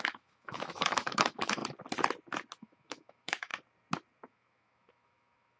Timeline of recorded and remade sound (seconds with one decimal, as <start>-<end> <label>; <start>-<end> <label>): 0.0-1.6 remade; 1.6-2.6 recorded; 2.6-3.5 remade; 3.5-4.3 recorded; 4.3-5.6 remade